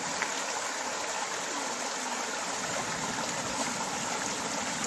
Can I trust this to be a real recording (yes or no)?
yes